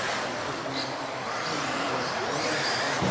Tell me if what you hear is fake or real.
real